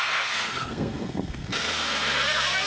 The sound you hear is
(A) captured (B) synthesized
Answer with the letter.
B